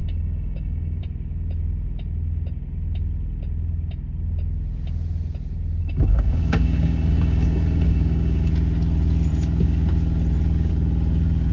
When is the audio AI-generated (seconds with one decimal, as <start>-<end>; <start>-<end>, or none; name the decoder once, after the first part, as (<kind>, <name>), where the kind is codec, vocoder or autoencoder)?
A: 0.0-1.0 (codec, DAC); 5.8-8.5